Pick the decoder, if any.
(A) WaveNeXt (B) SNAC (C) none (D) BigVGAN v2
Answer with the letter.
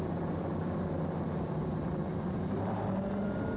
C